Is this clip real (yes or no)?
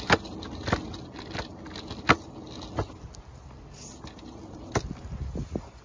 yes